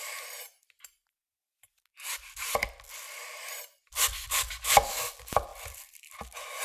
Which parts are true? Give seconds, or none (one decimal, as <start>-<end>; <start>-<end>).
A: 0.0-5.5